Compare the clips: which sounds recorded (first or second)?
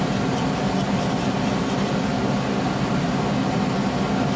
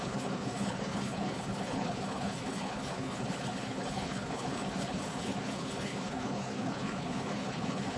first